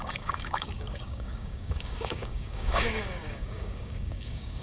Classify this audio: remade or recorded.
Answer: remade